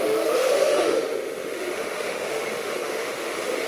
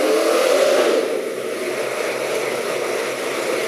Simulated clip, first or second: first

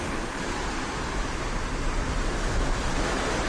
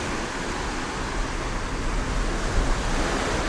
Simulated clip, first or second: first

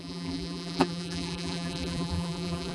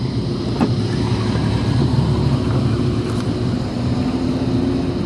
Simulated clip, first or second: first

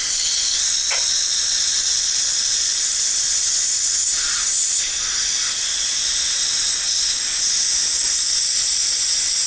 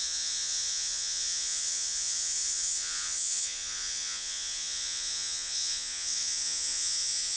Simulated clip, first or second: second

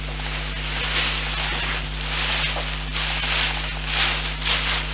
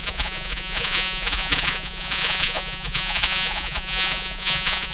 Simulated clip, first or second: second